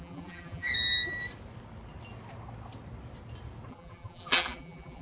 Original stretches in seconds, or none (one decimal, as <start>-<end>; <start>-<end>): 0.7-3.7